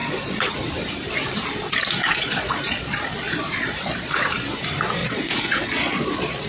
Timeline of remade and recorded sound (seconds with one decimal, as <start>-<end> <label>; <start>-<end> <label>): 0.0-0.5 remade; 0.5-2.0 recorded; 2.0-4.3 remade; 4.3-5.0 recorded; 5.0-6.5 remade